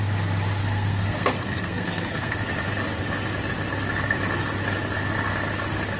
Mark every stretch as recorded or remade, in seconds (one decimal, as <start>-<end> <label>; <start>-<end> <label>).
0.0-0.6 recorded; 0.6-2.4 remade; 2.4-6.0 recorded